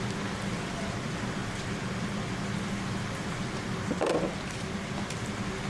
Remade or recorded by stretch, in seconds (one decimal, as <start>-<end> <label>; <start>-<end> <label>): 0.0-5.7 recorded